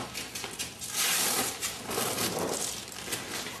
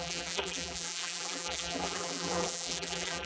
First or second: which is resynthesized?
second